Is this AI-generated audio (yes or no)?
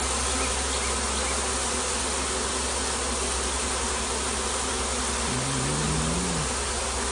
no